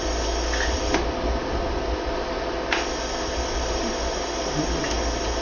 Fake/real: real